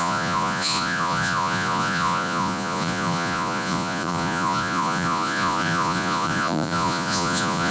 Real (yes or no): no